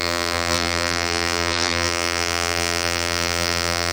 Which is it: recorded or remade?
remade